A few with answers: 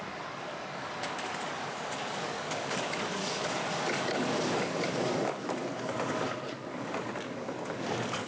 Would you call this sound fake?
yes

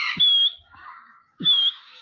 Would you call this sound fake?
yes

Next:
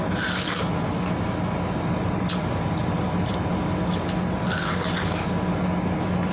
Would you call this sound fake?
no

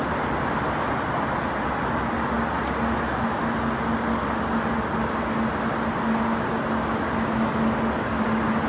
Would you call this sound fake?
no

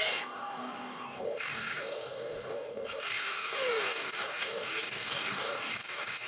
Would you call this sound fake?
yes